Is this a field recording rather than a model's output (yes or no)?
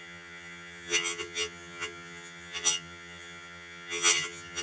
no